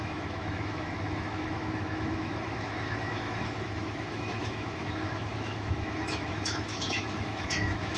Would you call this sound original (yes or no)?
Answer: no